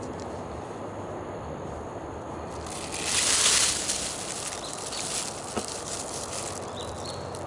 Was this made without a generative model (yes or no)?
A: yes